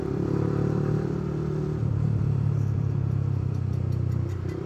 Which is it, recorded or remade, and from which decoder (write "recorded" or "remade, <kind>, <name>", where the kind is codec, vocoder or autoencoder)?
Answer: remade, vocoder, BigVGAN v2